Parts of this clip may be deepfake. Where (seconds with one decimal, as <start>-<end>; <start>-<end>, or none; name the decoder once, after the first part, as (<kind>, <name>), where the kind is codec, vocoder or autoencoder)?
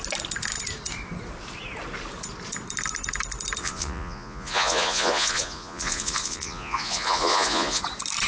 3.6-7.8 (vocoder, Vocos)